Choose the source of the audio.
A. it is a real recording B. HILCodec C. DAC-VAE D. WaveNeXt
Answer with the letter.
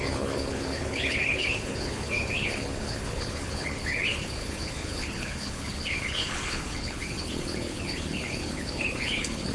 B